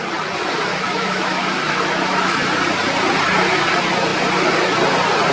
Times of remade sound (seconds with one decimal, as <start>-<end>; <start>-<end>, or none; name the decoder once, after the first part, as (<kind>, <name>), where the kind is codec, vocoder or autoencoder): 0.7-2.4 (autoencoder, DAC-VAE)

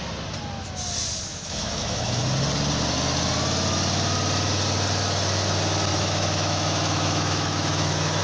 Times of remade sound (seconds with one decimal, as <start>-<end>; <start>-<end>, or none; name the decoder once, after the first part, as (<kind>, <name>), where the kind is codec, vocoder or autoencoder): 1.3-2.2 (autoencoder, DAC-VAE); 5.9-8.2